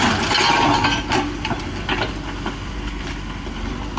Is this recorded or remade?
recorded